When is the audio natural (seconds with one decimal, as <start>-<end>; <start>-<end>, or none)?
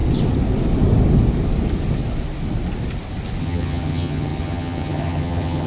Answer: 0.0-3.4